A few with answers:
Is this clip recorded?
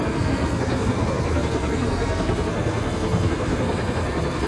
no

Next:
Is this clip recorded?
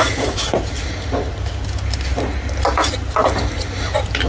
yes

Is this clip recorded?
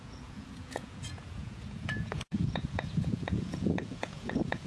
no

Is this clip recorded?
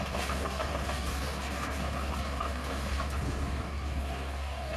no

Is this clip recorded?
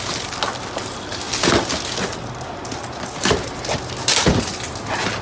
yes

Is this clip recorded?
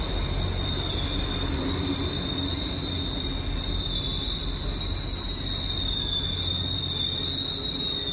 yes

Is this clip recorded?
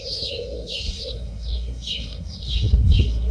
no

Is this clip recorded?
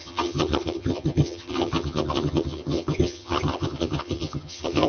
no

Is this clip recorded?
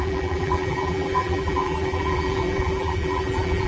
no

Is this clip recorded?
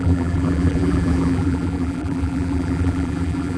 no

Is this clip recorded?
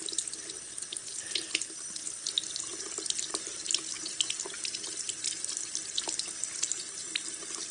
yes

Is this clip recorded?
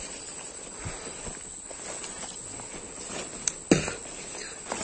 yes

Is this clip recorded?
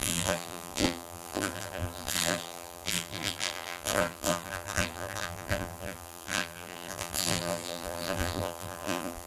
no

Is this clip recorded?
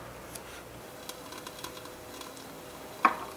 yes